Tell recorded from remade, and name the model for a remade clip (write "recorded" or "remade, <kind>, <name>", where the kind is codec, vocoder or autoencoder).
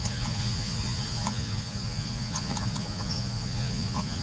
remade, vocoder, Vocos